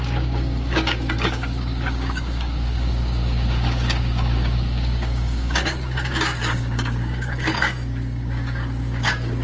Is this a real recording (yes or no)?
no